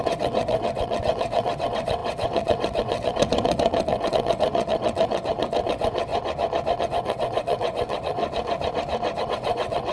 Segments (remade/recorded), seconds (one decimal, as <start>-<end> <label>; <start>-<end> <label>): 0.0-6.1 remade; 6.1-6.8 recorded; 6.8-8.2 remade; 8.2-9.2 recorded; 9.2-9.9 remade